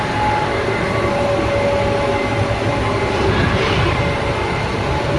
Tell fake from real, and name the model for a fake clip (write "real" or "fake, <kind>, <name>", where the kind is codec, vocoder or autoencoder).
real